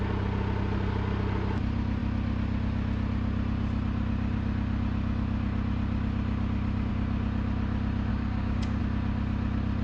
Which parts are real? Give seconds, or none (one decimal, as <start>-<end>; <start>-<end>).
0.0-8.1; 8.8-9.8